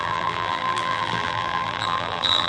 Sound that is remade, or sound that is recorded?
remade